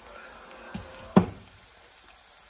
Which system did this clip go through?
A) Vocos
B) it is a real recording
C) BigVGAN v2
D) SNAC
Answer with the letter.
B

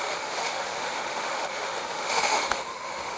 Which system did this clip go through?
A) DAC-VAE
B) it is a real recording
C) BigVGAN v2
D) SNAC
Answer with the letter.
A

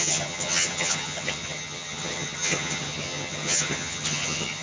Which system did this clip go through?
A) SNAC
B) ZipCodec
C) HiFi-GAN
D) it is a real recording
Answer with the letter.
C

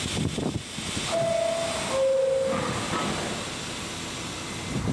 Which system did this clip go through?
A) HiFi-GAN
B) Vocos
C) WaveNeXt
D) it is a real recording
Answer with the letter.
D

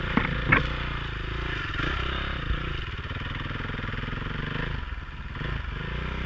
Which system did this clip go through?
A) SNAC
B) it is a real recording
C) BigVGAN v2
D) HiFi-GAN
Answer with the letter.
B